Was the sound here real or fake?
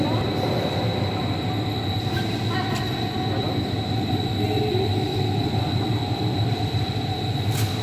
real